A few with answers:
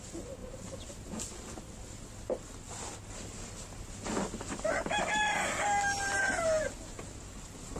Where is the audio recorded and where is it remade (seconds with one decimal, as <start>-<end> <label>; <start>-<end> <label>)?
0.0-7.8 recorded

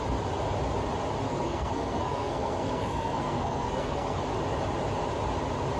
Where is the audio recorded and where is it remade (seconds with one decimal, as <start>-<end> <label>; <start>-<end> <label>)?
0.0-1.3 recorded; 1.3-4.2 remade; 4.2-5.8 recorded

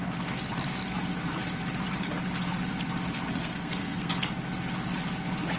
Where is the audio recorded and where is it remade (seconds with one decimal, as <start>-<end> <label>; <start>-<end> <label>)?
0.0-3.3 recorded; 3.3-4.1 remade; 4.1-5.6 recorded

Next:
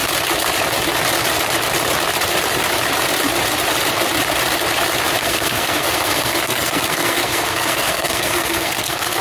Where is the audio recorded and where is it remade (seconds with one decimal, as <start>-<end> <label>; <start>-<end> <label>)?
0.0-5.2 recorded; 5.2-9.2 remade